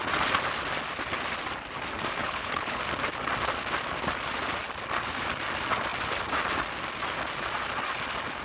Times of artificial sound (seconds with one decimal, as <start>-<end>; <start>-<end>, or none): 2.2-2.8